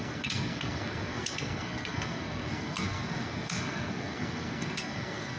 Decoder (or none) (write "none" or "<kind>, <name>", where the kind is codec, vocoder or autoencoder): codec, SNAC